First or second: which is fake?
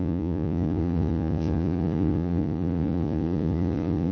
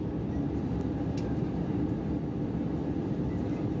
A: first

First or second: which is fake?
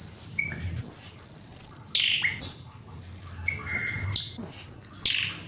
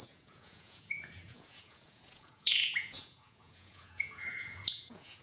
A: second